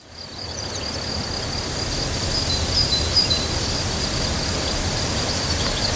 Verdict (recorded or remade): recorded